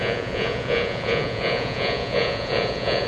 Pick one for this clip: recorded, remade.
remade